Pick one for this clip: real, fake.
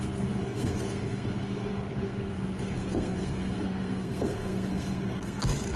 fake